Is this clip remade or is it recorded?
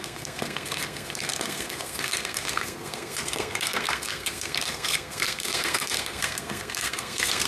remade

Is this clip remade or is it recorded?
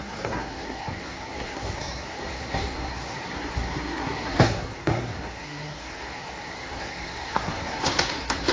remade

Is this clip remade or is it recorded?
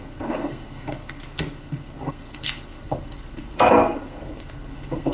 remade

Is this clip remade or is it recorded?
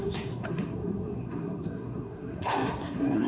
remade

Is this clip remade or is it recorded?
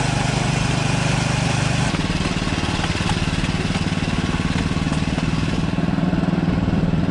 recorded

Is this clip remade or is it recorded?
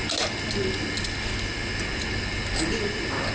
recorded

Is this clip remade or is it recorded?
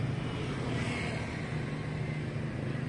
recorded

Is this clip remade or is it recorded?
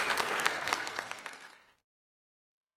remade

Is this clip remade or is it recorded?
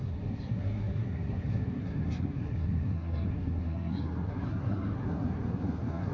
remade